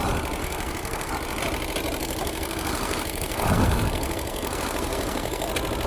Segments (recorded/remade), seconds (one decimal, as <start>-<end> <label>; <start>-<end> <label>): 0.0-0.4 recorded; 0.4-1.1 remade; 1.1-2.0 recorded; 2.0-5.5 remade; 5.5-5.9 recorded